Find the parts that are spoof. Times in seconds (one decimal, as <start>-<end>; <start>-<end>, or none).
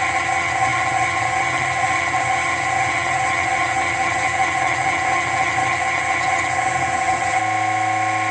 0.0-7.4